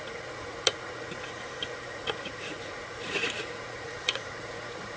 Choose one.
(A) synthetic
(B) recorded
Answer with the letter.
A